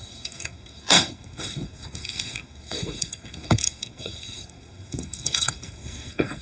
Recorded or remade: remade